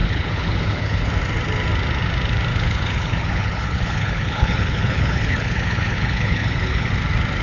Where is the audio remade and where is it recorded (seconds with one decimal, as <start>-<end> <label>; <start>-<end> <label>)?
0.0-1.1 remade; 1.1-2.5 recorded; 2.5-6.9 remade; 6.9-7.4 recorded